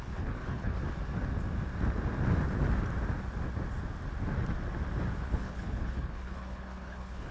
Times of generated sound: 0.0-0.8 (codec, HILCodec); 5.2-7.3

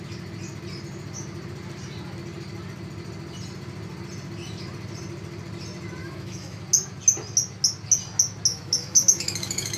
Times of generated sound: 6.0-6.6 (autoencoder, DAC-VAE); 8.5-9.8

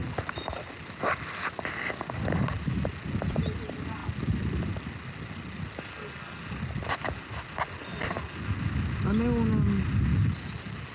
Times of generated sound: none

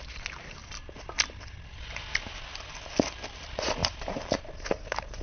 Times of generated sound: none

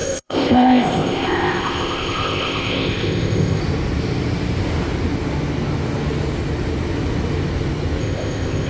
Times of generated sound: 0.0-3.6 (codec, ZipCodec); 8.0-8.7